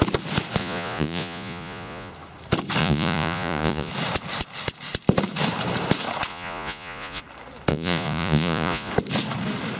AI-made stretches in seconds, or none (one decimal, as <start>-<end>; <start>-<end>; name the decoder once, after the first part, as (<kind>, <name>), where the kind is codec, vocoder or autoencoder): 0.6-2.1 (vocoder, Vocos); 2.8-3.9; 6.3-7.2; 7.7-8.9